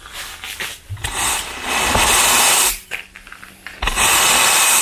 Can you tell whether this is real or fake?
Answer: real